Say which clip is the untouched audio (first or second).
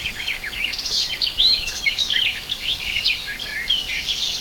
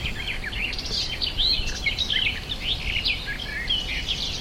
second